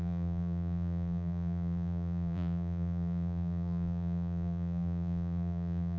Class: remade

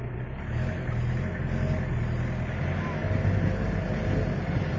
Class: recorded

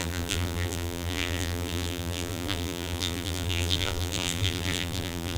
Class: remade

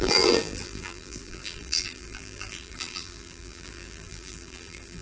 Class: remade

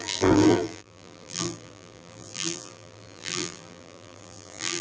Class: remade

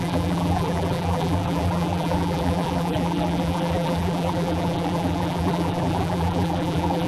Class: remade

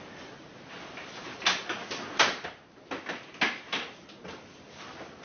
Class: recorded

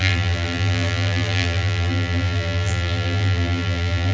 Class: remade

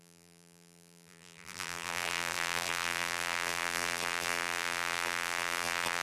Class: remade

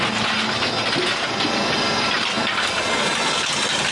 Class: recorded